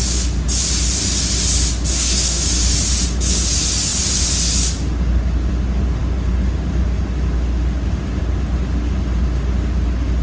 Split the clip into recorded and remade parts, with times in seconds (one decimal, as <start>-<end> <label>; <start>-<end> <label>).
0.0-1.9 recorded; 1.9-2.4 remade; 2.4-10.2 recorded